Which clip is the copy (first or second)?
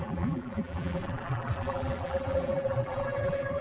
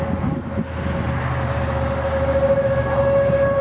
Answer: first